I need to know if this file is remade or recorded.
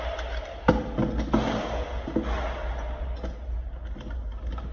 recorded